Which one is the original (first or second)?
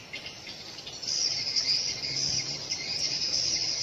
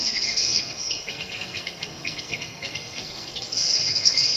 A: first